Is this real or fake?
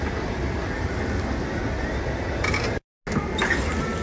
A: real